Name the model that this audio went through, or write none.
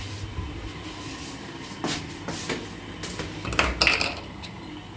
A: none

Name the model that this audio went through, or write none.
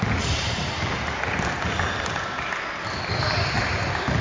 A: none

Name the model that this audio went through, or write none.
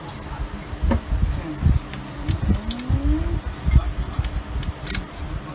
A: none